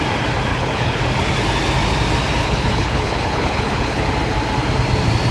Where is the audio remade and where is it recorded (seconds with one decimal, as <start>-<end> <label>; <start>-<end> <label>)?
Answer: 0.0-0.5 recorded; 0.5-1.0 remade; 1.0-2.4 recorded; 2.4-4.0 remade; 4.0-5.3 recorded